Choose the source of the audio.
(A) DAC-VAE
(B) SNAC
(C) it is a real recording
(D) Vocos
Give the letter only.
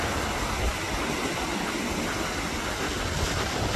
C